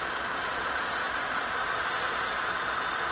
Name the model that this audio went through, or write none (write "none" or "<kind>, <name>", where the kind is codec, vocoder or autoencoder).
vocoder, Vocos